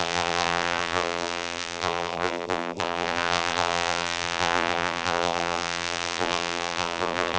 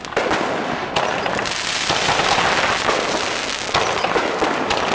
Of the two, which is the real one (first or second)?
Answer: second